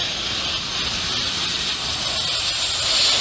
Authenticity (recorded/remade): recorded